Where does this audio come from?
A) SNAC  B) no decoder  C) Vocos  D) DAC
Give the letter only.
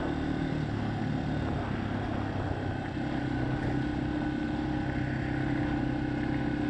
B